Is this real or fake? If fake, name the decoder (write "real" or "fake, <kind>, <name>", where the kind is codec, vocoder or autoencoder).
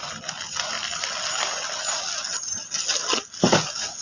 real